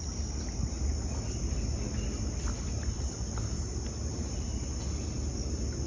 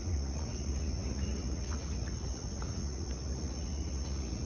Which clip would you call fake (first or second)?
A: second